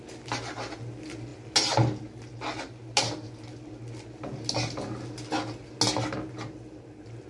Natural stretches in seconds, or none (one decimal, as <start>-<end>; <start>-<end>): 0.0-7.3